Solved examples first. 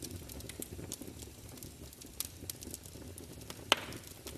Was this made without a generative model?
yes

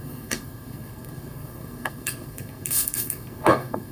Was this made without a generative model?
no